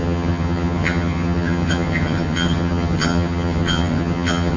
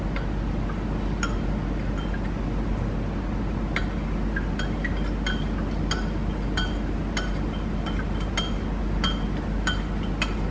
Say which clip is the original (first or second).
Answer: second